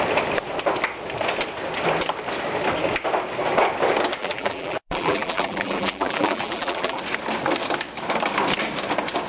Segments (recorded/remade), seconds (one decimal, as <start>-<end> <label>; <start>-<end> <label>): 0.0-4.2 recorded; 4.2-7.0 remade; 7.0-9.3 recorded